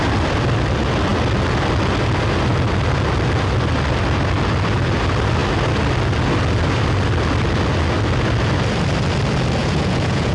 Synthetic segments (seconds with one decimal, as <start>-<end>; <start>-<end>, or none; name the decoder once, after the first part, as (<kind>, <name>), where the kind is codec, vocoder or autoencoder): 9.6-10.3 (vocoder, Vocos)